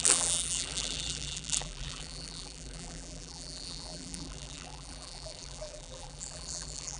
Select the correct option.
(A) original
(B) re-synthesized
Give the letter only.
B